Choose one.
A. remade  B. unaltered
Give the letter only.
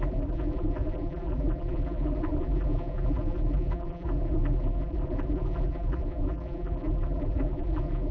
A